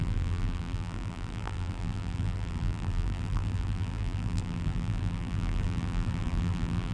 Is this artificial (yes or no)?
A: yes